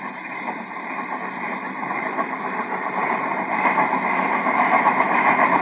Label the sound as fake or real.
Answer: real